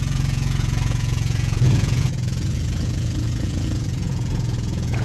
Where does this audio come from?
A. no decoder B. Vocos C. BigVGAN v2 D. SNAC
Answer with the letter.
B